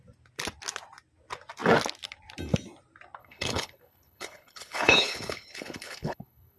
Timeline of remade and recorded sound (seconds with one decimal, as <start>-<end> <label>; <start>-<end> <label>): 0.0-3.2 recorded; 3.2-6.6 remade